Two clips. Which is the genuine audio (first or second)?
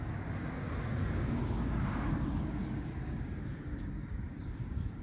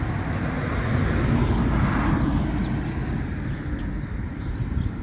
second